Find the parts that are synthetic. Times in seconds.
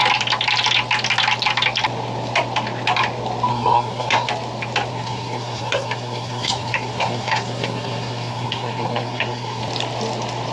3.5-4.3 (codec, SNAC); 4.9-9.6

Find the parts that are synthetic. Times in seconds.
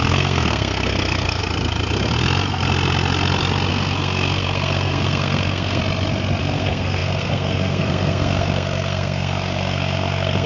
0.0-1.4 (codec, SNAC); 3.7-5.8; 6.4-10.5